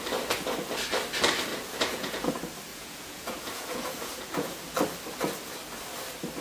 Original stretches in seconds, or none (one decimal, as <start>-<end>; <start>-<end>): 0.0-1.5; 2.3-2.7; 4.6-6.4